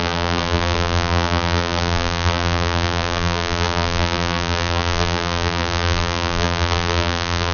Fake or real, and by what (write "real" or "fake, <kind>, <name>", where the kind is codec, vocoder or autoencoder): fake, vocoder, BigVGAN v2